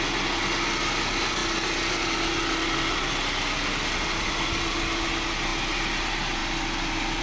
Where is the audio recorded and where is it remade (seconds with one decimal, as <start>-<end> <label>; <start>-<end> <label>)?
0.0-7.2 recorded